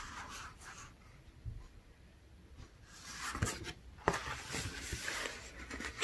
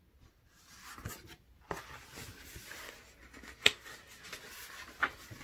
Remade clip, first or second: first